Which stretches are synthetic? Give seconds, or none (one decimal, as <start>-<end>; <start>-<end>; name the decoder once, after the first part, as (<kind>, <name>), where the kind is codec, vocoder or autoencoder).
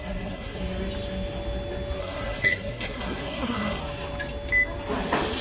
0.0-0.6 (codec, SNAC); 2.0-3.8